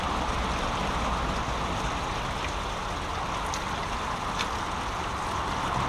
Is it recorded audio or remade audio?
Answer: recorded